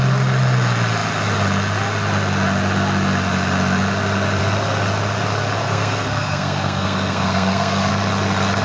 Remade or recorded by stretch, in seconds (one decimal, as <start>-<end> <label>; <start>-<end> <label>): 0.0-5.6 recorded; 5.6-7.9 remade; 7.9-8.6 recorded